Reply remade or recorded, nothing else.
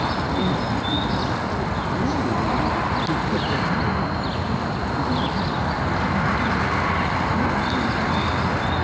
recorded